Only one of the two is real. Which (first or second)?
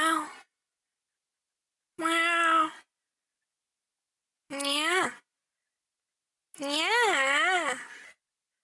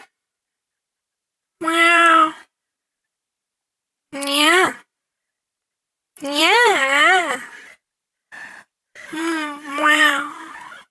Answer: first